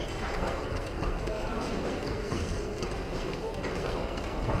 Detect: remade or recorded remade